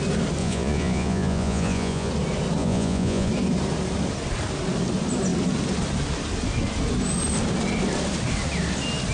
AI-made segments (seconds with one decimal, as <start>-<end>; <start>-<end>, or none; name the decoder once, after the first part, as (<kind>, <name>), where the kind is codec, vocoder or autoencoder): 0.4-2.1 (vocoder, Vocos); 2.6-3.3